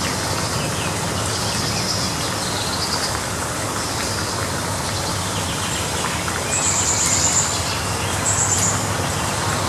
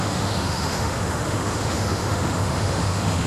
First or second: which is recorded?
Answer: first